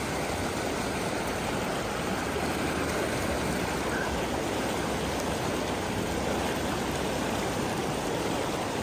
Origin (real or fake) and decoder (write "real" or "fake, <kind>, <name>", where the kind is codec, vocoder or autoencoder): real